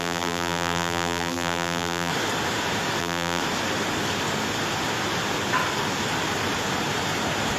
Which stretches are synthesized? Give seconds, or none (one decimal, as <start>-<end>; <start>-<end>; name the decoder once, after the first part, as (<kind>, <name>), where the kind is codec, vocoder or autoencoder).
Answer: 0.0-2.1 (vocoder, BigVGAN v2); 3.0-3.4